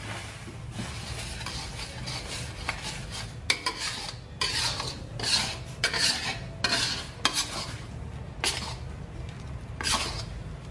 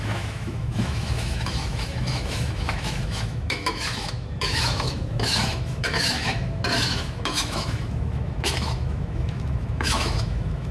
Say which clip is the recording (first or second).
first